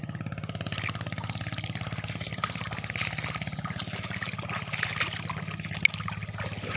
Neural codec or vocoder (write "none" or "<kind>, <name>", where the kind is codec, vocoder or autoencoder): none